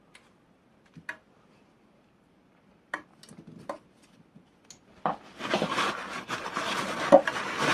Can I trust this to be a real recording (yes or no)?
yes